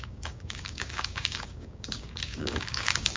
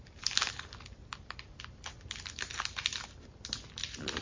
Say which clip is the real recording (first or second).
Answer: second